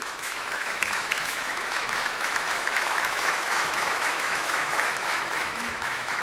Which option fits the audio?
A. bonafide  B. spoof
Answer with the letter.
B